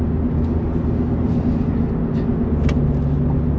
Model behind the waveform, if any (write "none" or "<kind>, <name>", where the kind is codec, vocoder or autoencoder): none